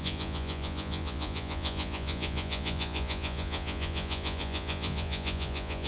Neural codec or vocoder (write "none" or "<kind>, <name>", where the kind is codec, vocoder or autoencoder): vocoder, Vocos